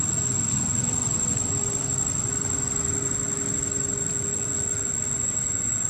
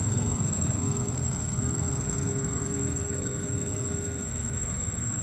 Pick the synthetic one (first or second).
second